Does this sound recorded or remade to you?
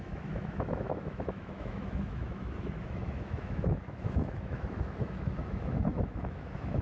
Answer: remade